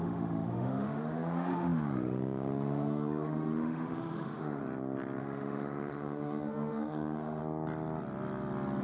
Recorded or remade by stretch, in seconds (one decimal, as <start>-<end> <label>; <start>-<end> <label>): 0.0-4.6 remade; 4.6-5.2 recorded; 5.2-7.4 remade; 7.4-8.8 recorded